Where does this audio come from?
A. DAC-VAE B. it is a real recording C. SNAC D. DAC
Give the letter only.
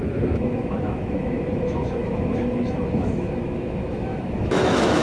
A